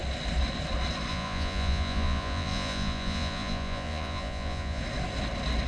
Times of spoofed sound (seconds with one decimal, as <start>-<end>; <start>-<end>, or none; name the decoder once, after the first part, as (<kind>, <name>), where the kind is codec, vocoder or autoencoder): 1.1-4.8 (vocoder, Vocos)